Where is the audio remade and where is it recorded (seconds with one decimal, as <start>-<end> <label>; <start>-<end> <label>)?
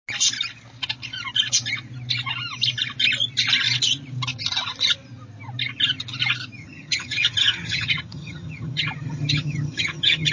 0.0-6.6 recorded; 6.6-10.3 remade